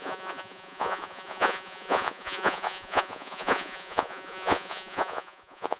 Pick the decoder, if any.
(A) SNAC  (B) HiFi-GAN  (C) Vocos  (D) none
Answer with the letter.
C